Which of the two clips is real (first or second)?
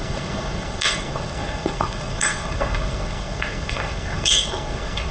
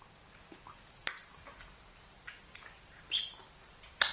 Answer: second